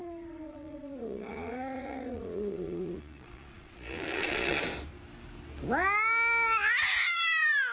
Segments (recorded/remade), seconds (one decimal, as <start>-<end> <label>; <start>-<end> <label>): 0.0-4.6 remade; 4.6-7.7 recorded